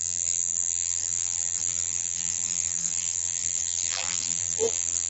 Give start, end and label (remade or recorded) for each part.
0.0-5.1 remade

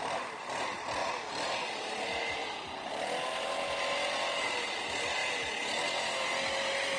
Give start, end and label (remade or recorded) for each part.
0.0-2.4 recorded; 2.4-2.9 remade; 2.9-7.0 recorded

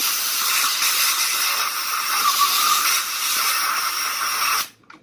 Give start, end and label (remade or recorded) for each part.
0.0-0.7 remade; 0.7-2.1 recorded; 2.1-5.0 remade

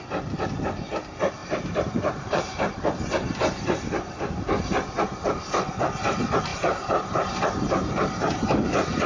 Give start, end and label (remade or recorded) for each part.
0.0-1.4 recorded; 1.4-4.6 remade; 4.6-6.5 recorded; 6.5-8.7 remade; 8.7-9.1 recorded

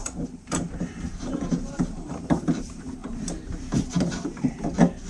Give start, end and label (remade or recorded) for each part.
0.0-3.0 remade; 3.0-5.1 recorded